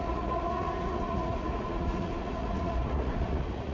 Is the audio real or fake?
fake